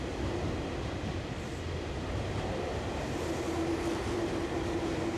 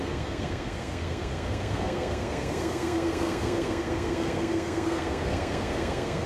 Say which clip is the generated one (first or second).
second